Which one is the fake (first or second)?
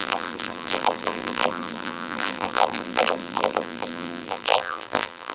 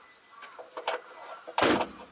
first